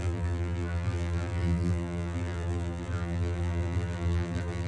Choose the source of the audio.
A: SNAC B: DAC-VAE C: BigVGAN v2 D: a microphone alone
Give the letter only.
C